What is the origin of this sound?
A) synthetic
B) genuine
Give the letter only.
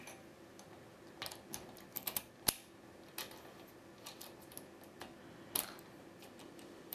B